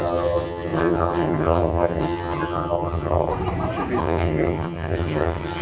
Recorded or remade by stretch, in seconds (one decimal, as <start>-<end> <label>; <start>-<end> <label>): 0.0-3.3 remade; 3.3-4.0 recorded; 4.0-5.6 remade